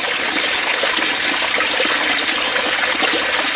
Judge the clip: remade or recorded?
recorded